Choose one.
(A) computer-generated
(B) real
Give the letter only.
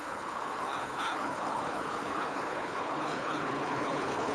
A